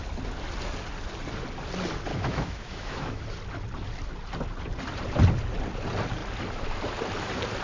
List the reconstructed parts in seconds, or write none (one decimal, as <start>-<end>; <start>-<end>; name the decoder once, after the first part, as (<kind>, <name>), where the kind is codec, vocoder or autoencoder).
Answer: 2.1-3.2 (autoencoder, DAC-VAE)